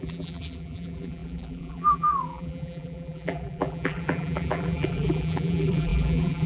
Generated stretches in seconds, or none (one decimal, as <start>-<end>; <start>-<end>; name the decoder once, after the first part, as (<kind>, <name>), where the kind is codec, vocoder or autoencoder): 0.0-6.5 (vocoder, BigVGAN v2)